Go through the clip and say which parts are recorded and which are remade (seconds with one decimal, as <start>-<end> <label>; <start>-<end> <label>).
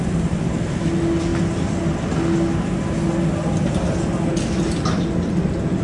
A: 0.0-5.8 recorded